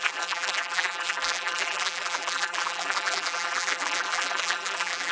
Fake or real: fake